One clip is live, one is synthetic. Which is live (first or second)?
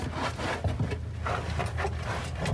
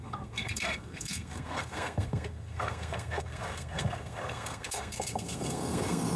first